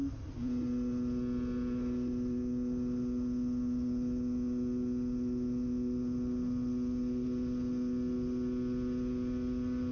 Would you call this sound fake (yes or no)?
no